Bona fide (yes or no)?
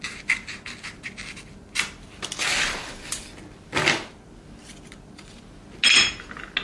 yes